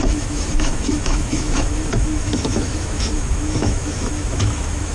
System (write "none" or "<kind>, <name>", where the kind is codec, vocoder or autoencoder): autoencoder, DAC-VAE